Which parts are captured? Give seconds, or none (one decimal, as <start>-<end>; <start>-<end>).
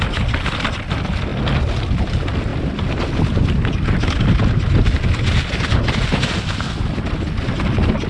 0.0-8.1